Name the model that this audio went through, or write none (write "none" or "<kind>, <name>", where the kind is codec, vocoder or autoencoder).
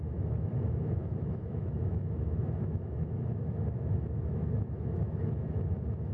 autoencoder, DAC-VAE